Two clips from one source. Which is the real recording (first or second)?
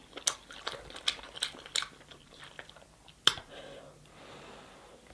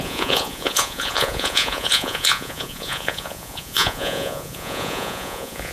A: first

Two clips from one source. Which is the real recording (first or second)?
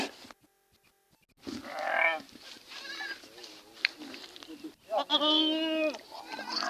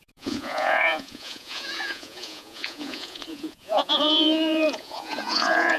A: first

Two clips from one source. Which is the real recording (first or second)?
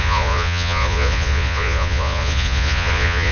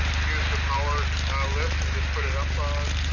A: second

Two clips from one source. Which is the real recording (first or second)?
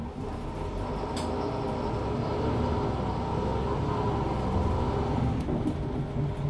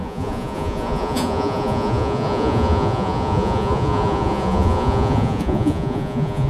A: first